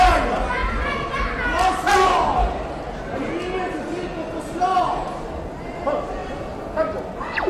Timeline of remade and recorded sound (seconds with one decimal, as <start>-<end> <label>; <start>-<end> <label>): 0.0-7.5 recorded